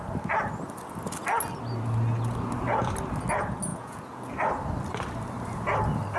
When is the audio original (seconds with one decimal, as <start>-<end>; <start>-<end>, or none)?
0.0-3.7; 4.3-6.2